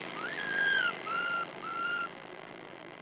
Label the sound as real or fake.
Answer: fake